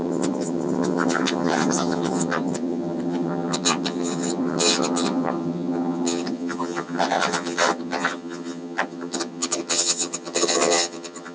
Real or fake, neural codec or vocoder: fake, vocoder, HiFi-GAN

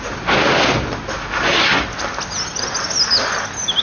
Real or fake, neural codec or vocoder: real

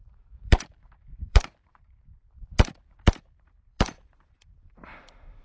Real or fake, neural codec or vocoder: fake, vocoder, BigVGAN v2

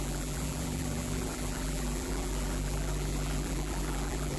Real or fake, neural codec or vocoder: fake, vocoder, BigVGAN v2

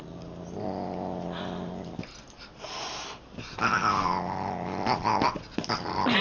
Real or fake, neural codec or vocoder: real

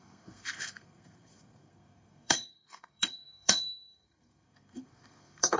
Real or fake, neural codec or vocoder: fake, codec, SNAC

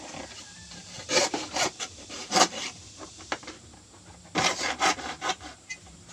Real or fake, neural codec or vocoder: fake, vocoder, BigVGAN v2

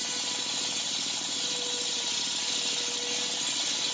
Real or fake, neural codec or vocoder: real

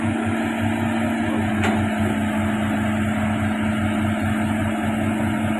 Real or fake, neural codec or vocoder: real